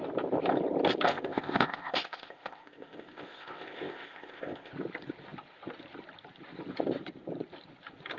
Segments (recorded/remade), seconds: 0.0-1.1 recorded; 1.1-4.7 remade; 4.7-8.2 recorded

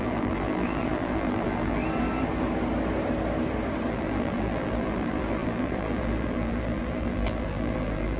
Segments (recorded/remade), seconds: 0.0-1.8 remade; 1.8-3.9 recorded; 3.9-8.2 remade

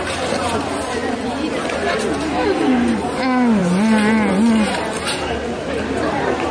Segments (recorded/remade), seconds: 0.0-6.5 recorded

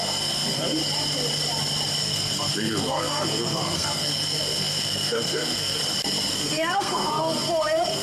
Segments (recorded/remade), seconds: 0.0-0.8 remade; 0.8-2.0 recorded; 2.0-5.8 remade; 5.8-6.3 recorded; 6.3-8.0 remade

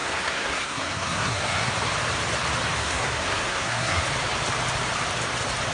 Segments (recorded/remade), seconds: 0.0-1.7 remade; 1.7-2.8 recorded; 2.8-4.0 remade; 4.0-5.7 recorded